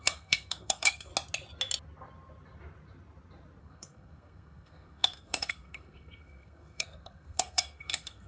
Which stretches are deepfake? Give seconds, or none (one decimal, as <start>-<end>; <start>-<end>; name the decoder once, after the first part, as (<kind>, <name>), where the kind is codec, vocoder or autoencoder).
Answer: 0.0-1.1 (codec, SNAC); 3.6-8.3